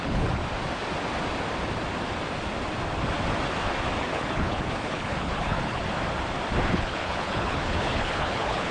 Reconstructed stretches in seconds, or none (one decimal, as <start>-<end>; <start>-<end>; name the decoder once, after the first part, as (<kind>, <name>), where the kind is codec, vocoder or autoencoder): 0.0-0.4 (codec, HILCodec); 4.0-5.8; 6.7-8.7